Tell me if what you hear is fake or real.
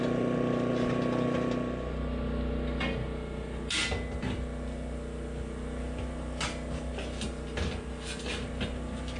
real